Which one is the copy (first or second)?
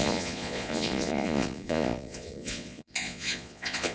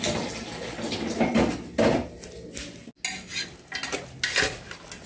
first